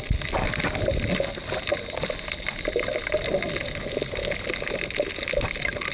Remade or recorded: recorded